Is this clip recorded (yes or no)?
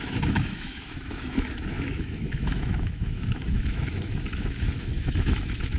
no